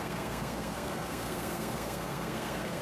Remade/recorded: remade